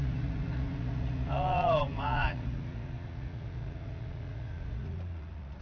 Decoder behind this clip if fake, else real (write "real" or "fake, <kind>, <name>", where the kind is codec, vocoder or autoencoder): fake, vocoder, Vocos